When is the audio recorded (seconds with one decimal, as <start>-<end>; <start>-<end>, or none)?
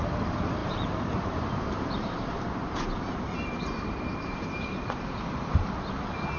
none